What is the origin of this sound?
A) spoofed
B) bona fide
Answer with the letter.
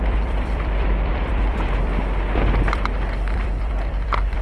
A